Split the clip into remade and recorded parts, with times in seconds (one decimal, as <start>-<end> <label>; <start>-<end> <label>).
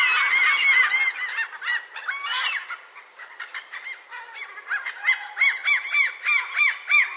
0.0-7.2 recorded